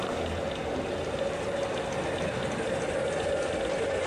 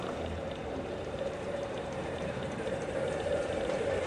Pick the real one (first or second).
first